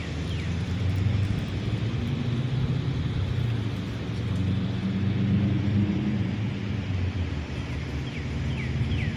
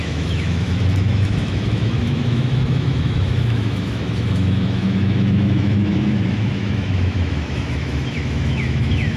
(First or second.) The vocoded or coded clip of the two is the second